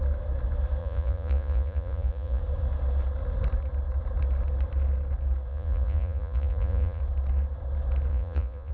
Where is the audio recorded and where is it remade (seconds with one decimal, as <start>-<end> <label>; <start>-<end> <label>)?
0.0-0.8 recorded; 0.8-2.4 remade; 2.4-5.5 recorded; 5.5-7.0 remade; 7.0-8.1 recorded; 8.1-8.7 remade